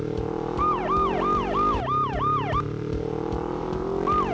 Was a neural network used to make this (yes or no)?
yes